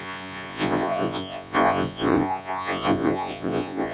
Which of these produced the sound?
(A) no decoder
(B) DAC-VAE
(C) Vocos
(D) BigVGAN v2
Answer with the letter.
C